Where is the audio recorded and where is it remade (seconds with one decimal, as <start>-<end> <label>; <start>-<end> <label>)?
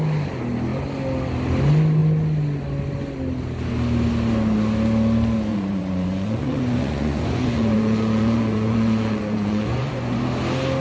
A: 0.0-5.5 recorded; 5.5-10.2 remade; 10.2-10.8 recorded